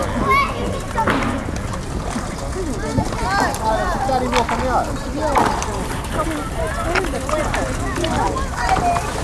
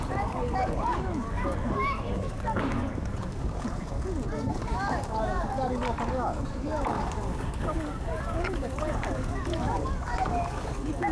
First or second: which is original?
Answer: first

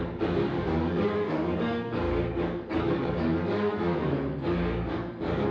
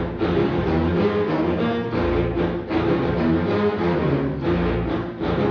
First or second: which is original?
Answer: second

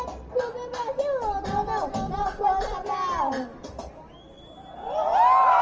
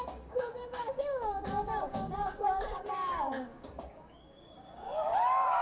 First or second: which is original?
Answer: first